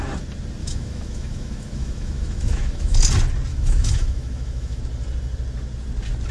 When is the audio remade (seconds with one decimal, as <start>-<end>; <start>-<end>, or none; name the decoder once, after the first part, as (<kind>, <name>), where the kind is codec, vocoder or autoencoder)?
0.6-3.0 (autoencoder, DAC-VAE); 3.5-4.8